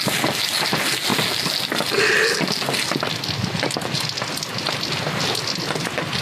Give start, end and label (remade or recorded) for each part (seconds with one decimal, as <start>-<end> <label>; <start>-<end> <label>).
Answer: 0.0-6.2 recorded